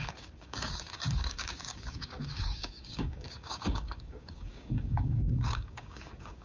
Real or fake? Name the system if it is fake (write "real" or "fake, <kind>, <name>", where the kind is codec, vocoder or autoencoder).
fake, codec, DAC